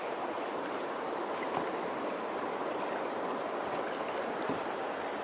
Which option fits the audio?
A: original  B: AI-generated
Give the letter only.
B